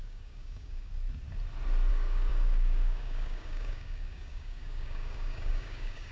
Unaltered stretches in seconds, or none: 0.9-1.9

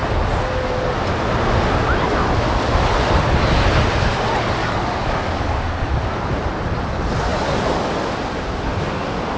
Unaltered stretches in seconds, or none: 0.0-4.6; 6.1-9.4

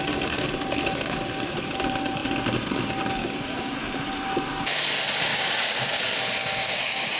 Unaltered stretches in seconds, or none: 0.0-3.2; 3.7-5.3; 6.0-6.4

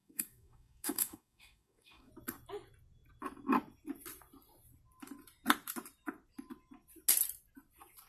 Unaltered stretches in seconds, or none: 2.1-8.1

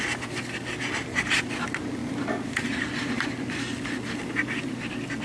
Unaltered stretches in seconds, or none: 0.0-5.2

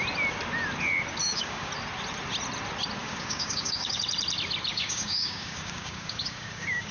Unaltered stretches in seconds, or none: 0.0-1.2; 1.7-3.0; 4.0-4.7

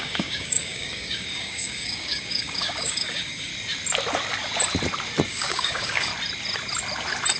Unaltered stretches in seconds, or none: 3.5-5.3; 6.1-7.4

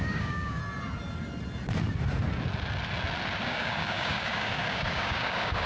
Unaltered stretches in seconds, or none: 0.6-3.4